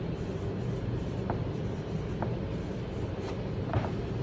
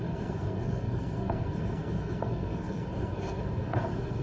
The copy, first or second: second